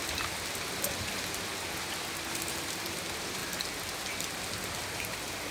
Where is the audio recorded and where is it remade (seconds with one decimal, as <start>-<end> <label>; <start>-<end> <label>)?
0.0-5.5 recorded

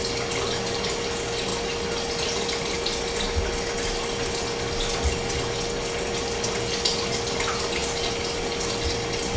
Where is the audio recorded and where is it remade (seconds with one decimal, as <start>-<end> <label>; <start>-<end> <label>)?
0.0-9.4 recorded

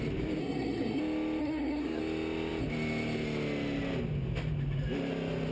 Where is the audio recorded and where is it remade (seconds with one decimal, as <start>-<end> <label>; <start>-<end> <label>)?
0.0-0.4 recorded; 0.4-1.0 remade; 1.0-1.4 recorded; 1.4-2.0 remade; 2.0-5.5 recorded

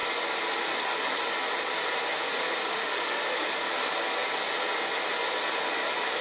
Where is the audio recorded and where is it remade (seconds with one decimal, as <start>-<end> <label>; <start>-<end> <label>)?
0.0-2.7 recorded; 2.7-3.5 remade; 3.5-6.2 recorded

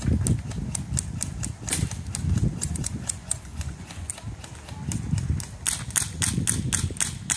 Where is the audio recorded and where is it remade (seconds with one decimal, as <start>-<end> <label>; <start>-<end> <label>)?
0.0-2.5 recorded; 2.5-4.1 remade; 4.1-7.4 recorded

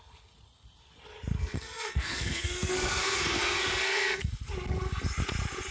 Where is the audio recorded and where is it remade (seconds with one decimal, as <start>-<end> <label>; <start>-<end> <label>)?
0.0-1.3 recorded; 1.3-4.3 remade; 4.3-5.7 recorded

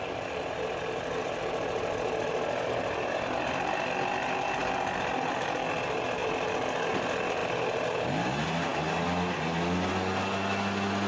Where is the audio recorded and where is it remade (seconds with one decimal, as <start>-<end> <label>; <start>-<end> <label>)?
0.0-11.1 recorded